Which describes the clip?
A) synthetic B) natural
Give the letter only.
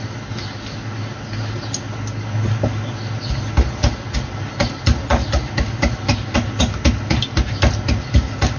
B